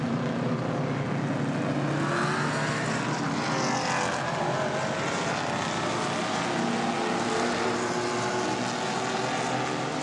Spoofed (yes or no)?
no